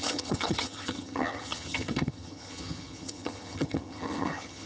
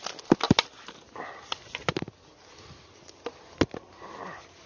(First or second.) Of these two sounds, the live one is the second